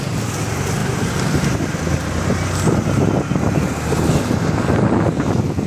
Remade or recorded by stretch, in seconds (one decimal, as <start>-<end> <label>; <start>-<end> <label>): 0.0-0.8 recorded; 0.8-2.3 remade; 2.3-5.7 recorded